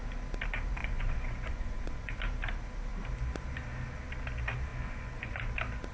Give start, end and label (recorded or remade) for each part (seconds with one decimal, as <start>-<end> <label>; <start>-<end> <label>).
0.0-0.8 recorded; 0.8-2.1 remade; 2.1-4.7 recorded; 4.7-5.5 remade; 5.5-5.9 recorded